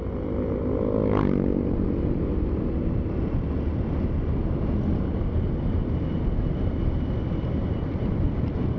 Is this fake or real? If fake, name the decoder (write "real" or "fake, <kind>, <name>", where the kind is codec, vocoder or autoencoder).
real